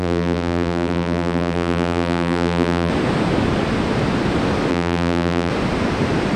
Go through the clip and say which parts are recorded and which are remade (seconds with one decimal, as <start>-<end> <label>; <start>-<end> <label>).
0.0-2.9 remade; 2.9-4.7 recorded; 4.7-5.5 remade; 5.5-6.4 recorded